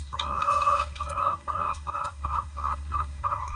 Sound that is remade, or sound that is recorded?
remade